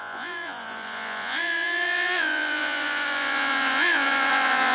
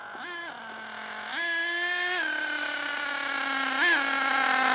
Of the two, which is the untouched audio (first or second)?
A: second